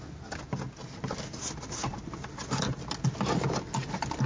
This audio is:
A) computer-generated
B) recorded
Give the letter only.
B